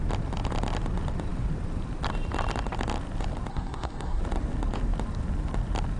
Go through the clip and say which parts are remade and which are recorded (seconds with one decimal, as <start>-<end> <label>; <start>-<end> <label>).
0.0-3.5 recorded; 3.5-4.2 remade; 4.2-6.0 recorded